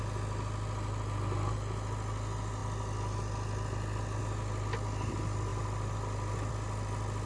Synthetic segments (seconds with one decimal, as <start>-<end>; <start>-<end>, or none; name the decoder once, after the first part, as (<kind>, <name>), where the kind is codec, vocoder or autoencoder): none